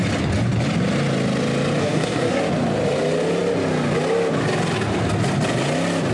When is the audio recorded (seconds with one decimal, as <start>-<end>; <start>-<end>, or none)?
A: 0.0-1.8; 2.4-6.1